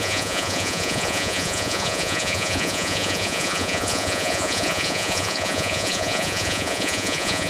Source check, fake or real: fake